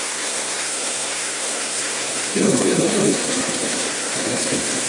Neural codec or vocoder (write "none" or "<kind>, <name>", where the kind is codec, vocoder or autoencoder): codec, SNAC